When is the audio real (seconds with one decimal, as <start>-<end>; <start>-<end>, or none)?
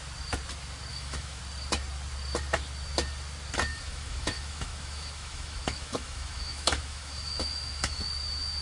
0.0-0.9; 1.4-3.7; 8.0-8.6